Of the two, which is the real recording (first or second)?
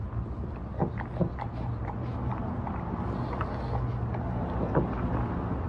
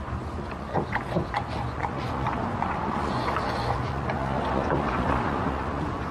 first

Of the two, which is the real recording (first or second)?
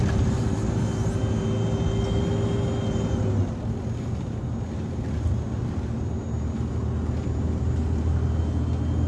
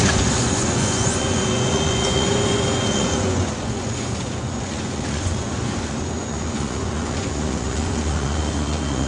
first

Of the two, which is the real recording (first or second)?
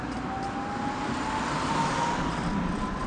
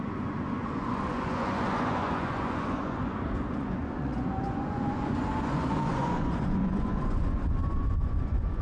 first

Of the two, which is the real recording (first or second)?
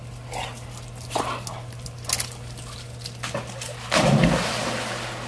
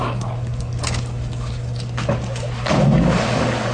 first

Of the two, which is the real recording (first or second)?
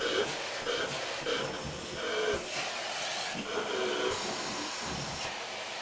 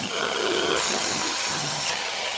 first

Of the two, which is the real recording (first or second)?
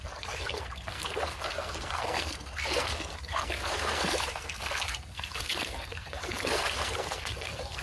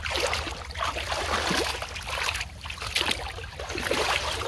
second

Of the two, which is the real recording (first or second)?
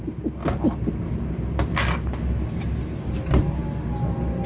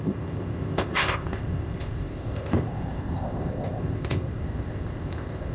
first